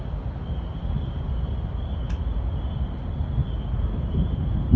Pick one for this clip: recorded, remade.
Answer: recorded